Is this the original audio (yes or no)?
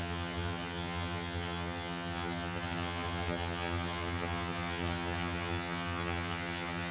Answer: no